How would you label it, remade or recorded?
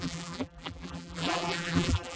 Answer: remade